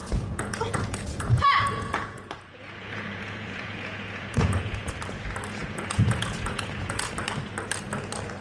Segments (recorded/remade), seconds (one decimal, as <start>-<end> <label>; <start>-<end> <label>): 0.0-4.9 remade; 4.9-5.6 recorded; 5.6-7.1 remade; 7.1-8.4 recorded